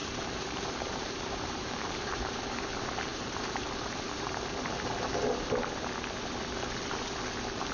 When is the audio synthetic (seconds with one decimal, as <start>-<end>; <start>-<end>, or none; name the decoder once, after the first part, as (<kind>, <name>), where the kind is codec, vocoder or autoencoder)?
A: 0.0-2.6 (vocoder, BigVGAN v2); 3.1-4.3